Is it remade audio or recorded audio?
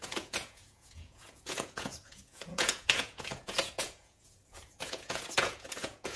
remade